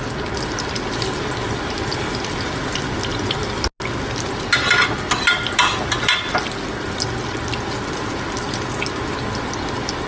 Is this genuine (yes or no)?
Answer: yes